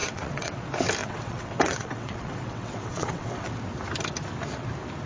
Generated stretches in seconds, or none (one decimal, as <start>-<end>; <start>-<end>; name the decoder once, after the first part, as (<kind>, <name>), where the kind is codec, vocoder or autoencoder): 0.0-0.6 (vocoder, WaveNeXt); 1.0-3.5